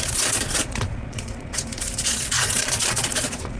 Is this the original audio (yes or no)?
no